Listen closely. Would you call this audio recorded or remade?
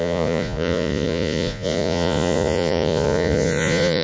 remade